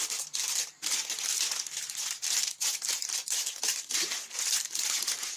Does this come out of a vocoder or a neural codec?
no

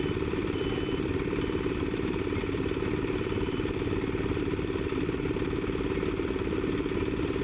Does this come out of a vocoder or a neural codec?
yes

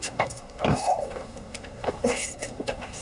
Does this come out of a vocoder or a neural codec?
yes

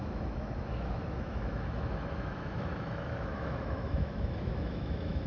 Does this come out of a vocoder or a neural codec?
yes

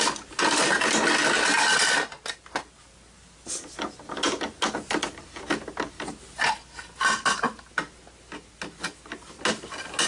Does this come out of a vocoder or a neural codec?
no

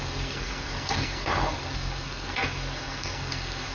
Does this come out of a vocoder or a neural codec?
yes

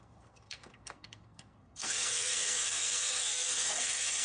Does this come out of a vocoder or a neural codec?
yes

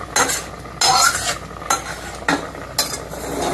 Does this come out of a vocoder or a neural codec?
no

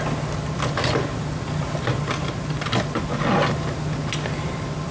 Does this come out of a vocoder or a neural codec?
no